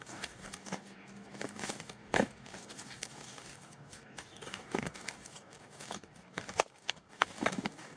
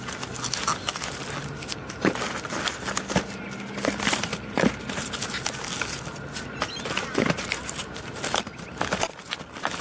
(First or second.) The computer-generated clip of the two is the first